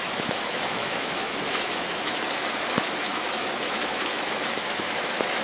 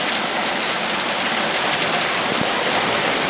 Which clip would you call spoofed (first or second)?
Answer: first